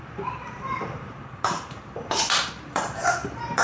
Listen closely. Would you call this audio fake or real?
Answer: fake